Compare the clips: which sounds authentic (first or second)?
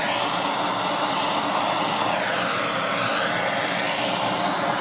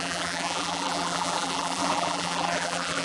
first